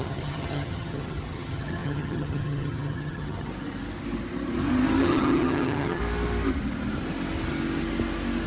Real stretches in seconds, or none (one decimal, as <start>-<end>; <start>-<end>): 3.5-5.0; 6.0-8.5